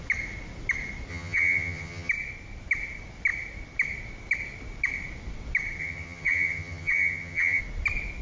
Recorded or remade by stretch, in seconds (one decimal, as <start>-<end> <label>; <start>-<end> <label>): 0.0-1.1 recorded; 1.1-2.1 remade; 2.1-5.8 recorded; 5.8-7.6 remade; 7.6-8.2 recorded